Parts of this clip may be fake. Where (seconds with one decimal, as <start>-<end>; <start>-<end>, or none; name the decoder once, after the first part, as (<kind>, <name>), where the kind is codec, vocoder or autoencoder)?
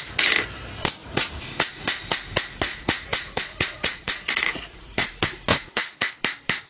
1.0-2.0 (vocoder, Vocos); 2.7-5.1; 5.5-6.1